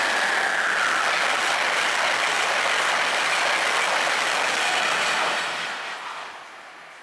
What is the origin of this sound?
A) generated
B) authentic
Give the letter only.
B